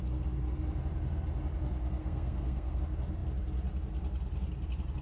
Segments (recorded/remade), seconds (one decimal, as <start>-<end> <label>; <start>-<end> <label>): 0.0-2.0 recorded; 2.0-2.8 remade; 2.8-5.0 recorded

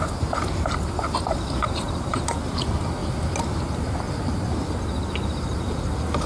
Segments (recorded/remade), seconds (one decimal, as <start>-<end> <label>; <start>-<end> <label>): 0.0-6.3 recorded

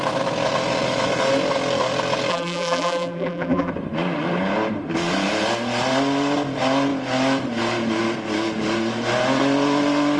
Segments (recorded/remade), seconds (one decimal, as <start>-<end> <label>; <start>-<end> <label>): 0.0-2.3 recorded; 2.3-3.7 remade; 3.7-10.2 recorded

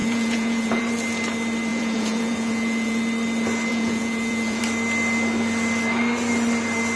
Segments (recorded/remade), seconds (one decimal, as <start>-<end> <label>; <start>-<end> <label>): 0.0-0.8 remade; 0.8-1.7 recorded; 1.7-3.0 remade; 3.0-3.7 recorded; 3.7-4.6 remade; 4.6-7.0 recorded

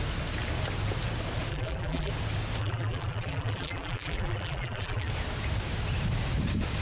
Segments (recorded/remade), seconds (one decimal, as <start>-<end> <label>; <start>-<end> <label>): 0.0-1.5 recorded; 1.5-2.1 remade; 2.1-2.6 recorded; 2.6-5.1 remade; 5.1-6.8 recorded

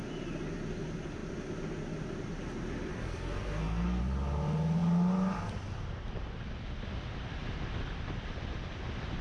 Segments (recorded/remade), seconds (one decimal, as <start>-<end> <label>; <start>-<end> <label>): 0.0-2.9 recorded; 2.9-4.0 remade; 4.0-9.2 recorded